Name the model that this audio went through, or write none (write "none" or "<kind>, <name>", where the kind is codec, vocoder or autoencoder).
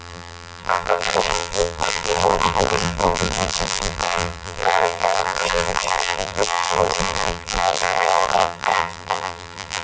vocoder, BigVGAN v2